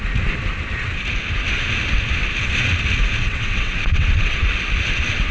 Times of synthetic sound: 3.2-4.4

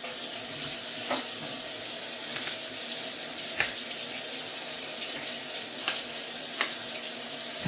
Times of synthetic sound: none

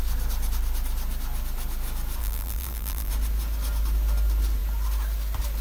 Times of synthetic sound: 2.2-3.1

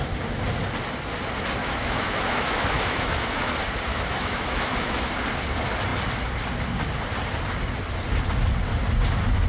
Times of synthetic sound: 1.6-3.5; 3.9-5.1